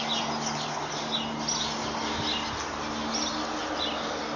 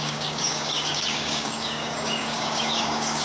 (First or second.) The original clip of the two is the first